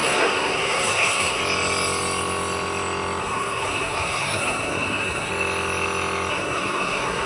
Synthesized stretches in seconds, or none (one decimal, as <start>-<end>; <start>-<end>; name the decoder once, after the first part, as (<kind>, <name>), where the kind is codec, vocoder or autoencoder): 0.0-1.4 (codec, SNAC); 3.2-5.3; 6.3-7.3